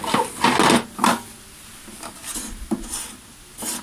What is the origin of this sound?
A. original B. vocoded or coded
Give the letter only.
A